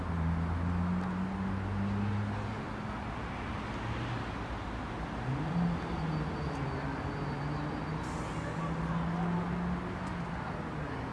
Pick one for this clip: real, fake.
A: real